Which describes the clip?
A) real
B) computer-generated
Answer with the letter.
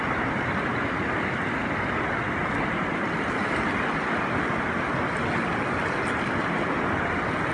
A